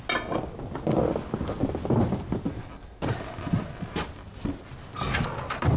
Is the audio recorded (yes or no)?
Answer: yes